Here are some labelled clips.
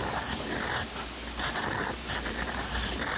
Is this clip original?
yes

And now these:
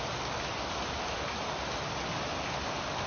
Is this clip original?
yes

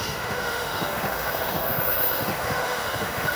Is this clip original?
no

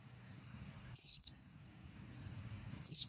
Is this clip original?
no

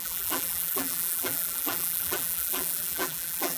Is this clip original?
no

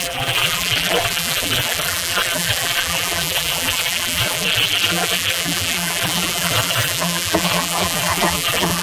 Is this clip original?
no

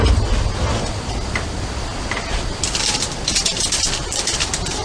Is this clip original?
yes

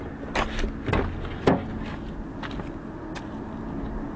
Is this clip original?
yes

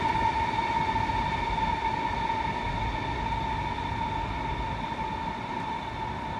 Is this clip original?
yes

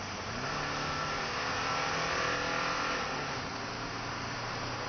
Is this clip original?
yes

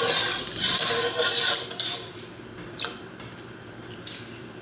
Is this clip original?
no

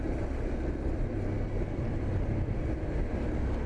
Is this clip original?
yes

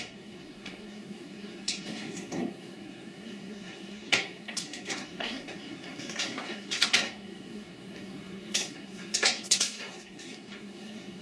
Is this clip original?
no